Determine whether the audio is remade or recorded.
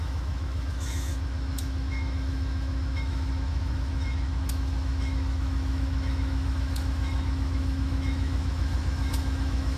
remade